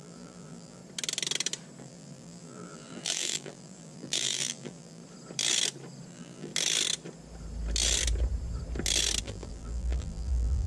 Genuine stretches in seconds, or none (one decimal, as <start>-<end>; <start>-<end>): 0.8-1.8; 5.0-6.1; 6.5-9.2